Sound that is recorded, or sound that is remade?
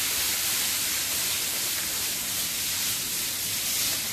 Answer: remade